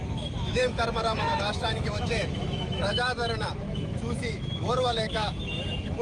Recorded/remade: remade